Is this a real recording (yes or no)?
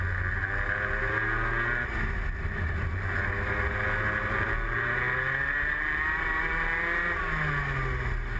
yes